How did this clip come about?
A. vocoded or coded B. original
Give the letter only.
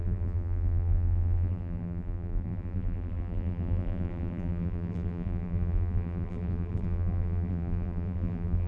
A